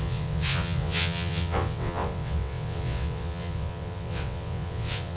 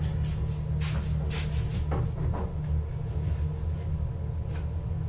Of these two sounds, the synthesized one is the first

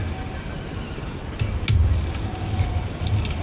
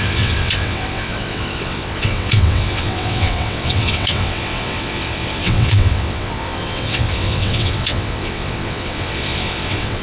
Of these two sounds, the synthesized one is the second